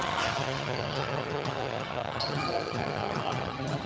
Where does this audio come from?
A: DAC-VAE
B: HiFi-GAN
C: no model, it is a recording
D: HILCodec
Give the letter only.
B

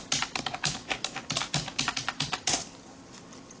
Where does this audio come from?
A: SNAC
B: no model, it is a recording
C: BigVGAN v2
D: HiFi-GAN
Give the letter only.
B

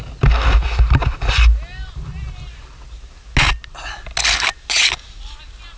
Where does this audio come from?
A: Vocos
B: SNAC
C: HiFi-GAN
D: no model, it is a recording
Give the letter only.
D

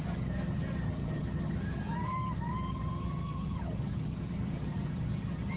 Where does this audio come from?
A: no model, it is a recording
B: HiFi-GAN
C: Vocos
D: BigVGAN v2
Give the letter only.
B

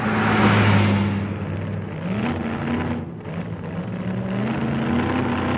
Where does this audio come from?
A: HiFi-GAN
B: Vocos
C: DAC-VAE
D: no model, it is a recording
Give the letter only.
D